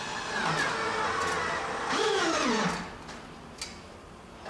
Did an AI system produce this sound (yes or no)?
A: no